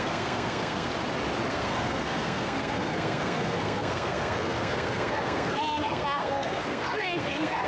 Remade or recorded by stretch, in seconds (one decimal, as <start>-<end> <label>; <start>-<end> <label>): 0.0-0.9 remade; 0.9-1.5 recorded; 1.5-7.7 remade